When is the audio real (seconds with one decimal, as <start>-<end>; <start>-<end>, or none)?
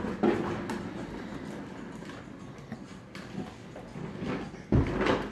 0.0-5.3